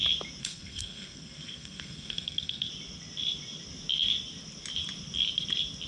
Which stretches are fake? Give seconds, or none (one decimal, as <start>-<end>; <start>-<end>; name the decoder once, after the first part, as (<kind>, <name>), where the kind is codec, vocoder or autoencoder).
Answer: 0.4-2.7 (codec, SNAC)